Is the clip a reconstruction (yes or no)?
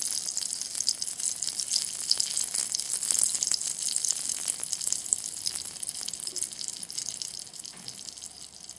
no